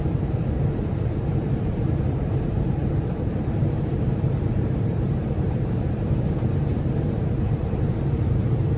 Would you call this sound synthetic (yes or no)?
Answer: yes